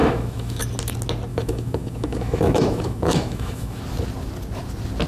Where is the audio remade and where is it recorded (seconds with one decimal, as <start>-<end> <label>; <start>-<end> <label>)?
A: 0.0-0.6 remade; 0.6-1.3 recorded; 1.3-3.8 remade; 3.8-5.1 recorded

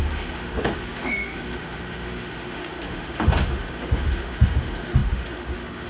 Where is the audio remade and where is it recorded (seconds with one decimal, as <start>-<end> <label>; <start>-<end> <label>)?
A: 0.0-5.9 remade

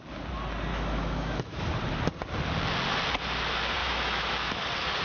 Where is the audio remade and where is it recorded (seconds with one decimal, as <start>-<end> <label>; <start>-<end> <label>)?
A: 0.0-0.7 recorded; 0.7-1.6 remade; 1.6-3.8 recorded; 3.8-4.6 remade; 4.6-5.0 recorded

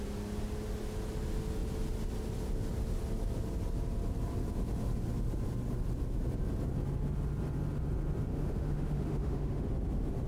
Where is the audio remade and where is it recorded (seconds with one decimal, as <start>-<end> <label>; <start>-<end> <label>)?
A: 0.0-8.3 recorded; 8.3-9.6 remade; 9.6-10.3 recorded

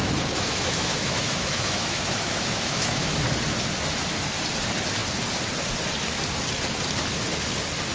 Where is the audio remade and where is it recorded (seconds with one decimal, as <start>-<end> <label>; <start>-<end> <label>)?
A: 0.0-3.1 remade; 3.1-7.9 recorded

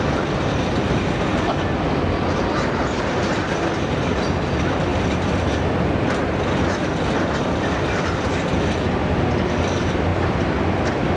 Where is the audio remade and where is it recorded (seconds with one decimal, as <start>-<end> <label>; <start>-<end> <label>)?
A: 0.0-11.2 recorded

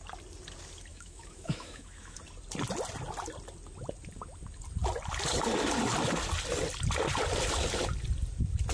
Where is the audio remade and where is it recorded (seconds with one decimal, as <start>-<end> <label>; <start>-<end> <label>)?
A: 0.0-0.9 recorded; 0.9-2.2 remade; 2.2-8.7 recorded